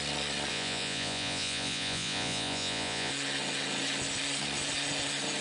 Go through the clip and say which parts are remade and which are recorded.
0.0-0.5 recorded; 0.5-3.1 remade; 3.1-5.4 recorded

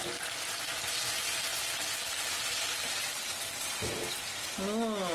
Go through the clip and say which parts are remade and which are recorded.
0.0-5.1 recorded